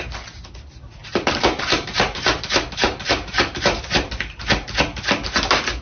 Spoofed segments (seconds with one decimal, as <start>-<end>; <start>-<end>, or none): 1.0-4.5

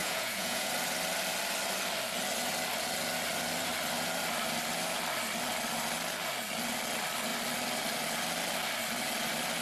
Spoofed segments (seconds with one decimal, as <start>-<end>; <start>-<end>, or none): 0.0-0.7

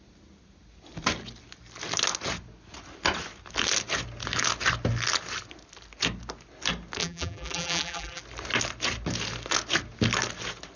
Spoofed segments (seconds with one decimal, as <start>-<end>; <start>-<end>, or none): 7.0-8.2

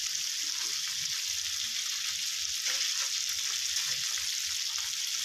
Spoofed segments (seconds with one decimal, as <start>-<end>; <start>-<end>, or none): none